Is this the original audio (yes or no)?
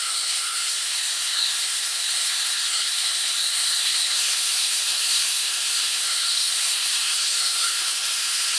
no